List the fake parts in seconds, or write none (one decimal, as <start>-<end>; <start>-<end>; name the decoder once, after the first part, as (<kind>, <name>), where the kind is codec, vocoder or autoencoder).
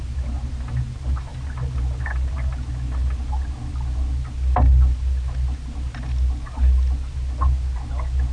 none